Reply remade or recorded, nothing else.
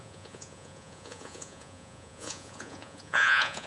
remade